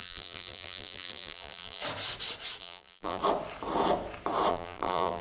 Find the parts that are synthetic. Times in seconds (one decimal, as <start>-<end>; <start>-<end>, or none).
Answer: 0.0-1.8; 2.6-3.2; 4.5-5.2